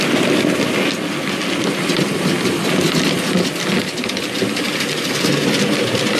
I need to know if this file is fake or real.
real